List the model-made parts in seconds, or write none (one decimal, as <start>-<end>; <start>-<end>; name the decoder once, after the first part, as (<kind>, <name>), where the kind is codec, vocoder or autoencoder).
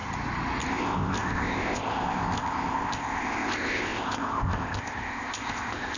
0.7-6.0 (codec, ZipCodec)